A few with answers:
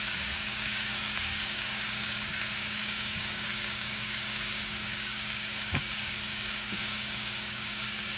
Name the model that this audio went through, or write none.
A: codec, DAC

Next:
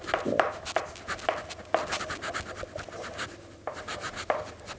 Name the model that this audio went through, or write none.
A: none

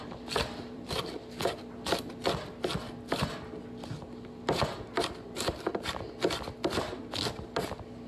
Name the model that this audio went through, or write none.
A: none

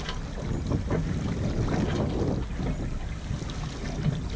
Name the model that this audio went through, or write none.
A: none